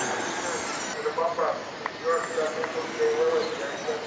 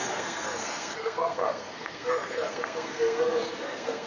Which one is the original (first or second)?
first